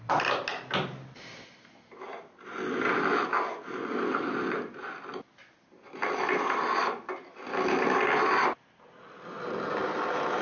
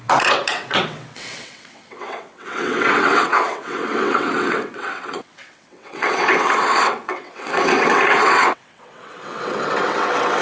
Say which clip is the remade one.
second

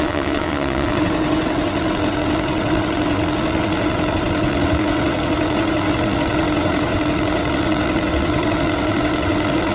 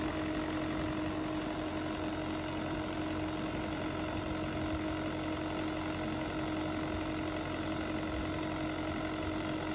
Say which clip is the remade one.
first